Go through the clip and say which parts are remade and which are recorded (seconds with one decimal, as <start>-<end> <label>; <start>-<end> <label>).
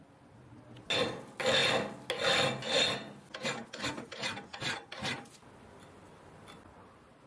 0.0-7.3 recorded